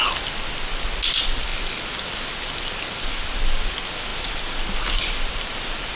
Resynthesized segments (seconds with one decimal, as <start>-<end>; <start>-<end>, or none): none